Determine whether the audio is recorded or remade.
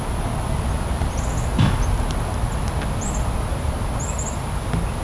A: recorded